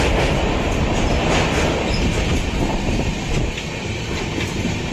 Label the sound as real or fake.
real